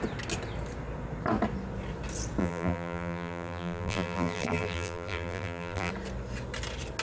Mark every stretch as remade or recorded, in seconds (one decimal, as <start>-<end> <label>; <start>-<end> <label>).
0.0-2.4 recorded; 2.4-5.9 remade; 5.9-7.0 recorded